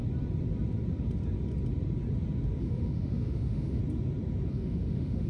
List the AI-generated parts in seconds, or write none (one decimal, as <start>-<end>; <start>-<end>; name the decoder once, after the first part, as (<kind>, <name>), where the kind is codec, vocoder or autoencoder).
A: 2.6-3.8 (autoencoder, DAC-VAE); 4.5-5.3

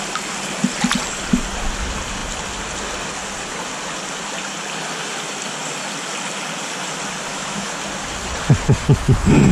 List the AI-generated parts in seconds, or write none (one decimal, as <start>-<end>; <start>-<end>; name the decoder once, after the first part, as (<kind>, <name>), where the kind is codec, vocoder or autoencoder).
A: 7.3-7.8 (autoencoder, DAC-VAE)

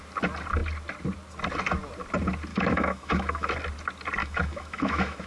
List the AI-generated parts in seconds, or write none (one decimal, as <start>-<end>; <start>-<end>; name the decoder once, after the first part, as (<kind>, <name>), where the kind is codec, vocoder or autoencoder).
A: 2.5-3.5 (autoencoder, DAC-VAE); 4.2-5.3

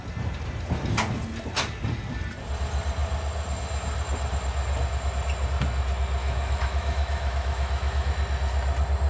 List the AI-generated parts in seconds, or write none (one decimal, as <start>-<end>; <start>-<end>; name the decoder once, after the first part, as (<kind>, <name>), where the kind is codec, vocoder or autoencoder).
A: 6.2-8.1 (autoencoder, DAC-VAE)

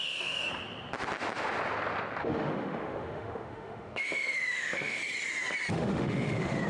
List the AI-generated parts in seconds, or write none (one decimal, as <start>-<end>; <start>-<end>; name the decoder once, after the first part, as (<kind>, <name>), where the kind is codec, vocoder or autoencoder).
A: 0.0-0.5 (autoencoder, DAC-VAE); 2.2-5.0; 5.7-6.7

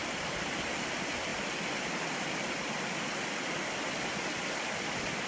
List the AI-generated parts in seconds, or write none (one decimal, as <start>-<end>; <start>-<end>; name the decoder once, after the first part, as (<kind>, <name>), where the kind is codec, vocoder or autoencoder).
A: none

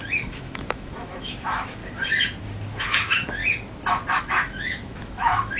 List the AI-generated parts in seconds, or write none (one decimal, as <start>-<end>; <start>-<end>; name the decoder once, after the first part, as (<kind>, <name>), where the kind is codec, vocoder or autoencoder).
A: 0.0-1.8 (autoencoder, DAC-VAE); 2.4-3.4; 4.2-5.6

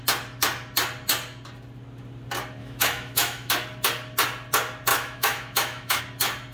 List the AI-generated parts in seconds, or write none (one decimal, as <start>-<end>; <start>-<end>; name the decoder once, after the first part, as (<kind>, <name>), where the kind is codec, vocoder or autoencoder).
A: 2.6-3.5 (autoencoder, DAC-VAE); 4.9-6.0